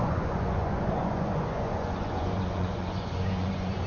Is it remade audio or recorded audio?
remade